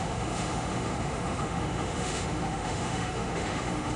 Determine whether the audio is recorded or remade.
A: remade